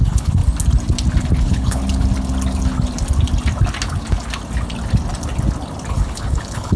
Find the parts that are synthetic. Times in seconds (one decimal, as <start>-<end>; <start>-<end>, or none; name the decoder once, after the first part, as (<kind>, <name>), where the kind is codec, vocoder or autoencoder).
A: 0.0-0.4 (codec, HILCodec); 1.4-1.8; 5.9-6.8